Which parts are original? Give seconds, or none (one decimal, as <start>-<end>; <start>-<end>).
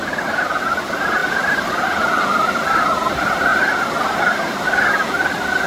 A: 0.0-5.7